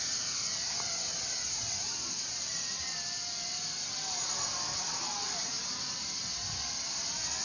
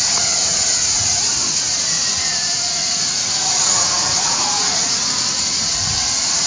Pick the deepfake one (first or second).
second